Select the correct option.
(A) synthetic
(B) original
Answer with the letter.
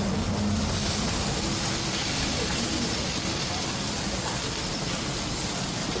B